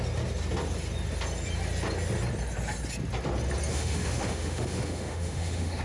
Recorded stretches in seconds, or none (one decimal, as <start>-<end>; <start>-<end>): 0.0-3.7